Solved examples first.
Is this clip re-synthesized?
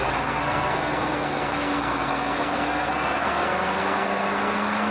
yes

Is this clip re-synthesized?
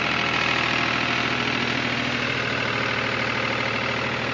no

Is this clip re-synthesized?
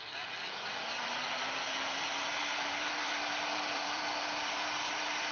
yes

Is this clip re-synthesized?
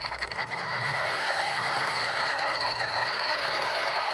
yes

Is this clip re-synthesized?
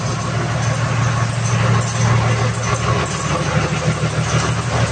no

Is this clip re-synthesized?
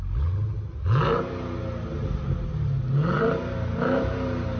no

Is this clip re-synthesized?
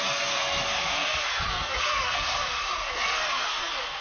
yes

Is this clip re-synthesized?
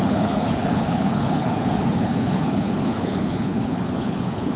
yes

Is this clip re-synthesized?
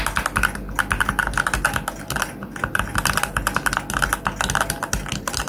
no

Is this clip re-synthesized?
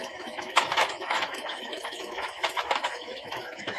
yes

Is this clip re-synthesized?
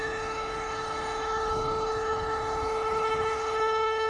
yes